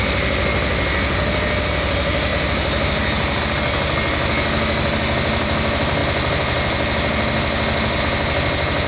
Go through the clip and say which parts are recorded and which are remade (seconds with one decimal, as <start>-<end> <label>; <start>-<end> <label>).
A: 0.0-8.9 recorded